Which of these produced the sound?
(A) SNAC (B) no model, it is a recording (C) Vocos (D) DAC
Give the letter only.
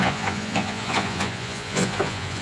C